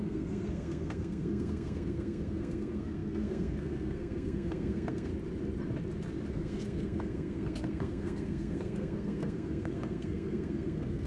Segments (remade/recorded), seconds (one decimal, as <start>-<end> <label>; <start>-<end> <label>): 0.0-5.1 remade; 5.1-6.3 recorded; 6.3-11.1 remade